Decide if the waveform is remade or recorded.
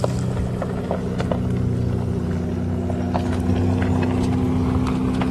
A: recorded